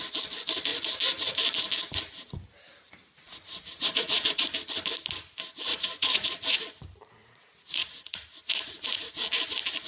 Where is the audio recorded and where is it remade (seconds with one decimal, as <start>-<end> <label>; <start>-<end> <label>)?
0.0-3.0 recorded; 3.0-4.4 remade; 4.4-5.7 recorded; 5.7-6.6 remade; 6.6-7.2 recorded; 7.2-9.1 remade; 9.1-9.9 recorded